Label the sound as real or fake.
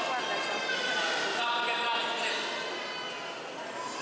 real